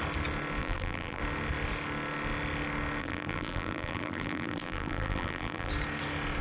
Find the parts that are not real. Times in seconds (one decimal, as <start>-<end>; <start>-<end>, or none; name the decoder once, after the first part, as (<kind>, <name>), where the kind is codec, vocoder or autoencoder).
0.6-1.2 (vocoder, BigVGAN v2); 3.0-5.7